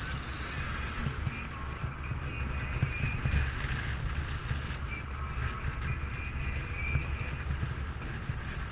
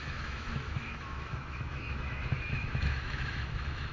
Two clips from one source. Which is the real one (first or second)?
first